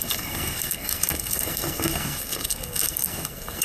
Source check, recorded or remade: remade